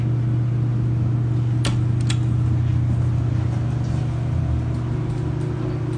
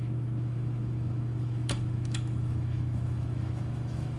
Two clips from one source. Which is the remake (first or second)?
second